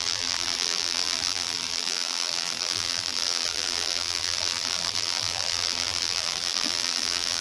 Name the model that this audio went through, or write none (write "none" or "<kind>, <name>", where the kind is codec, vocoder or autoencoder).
vocoder, BigVGAN v2